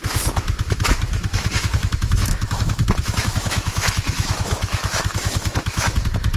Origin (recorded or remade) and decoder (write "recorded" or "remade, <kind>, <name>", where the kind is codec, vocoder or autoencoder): remade, autoencoder, DAC-VAE